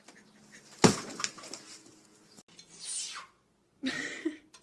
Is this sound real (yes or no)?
yes